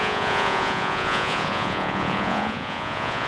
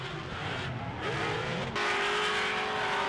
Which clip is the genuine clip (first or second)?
second